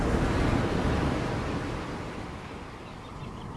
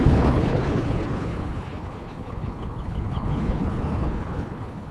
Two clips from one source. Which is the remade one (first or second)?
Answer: second